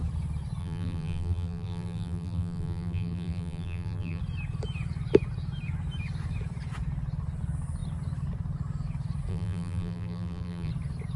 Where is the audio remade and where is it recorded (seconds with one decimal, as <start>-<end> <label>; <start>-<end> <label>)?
0.0-0.6 recorded; 0.6-4.2 remade; 4.2-9.3 recorded; 9.3-10.7 remade; 10.7-11.2 recorded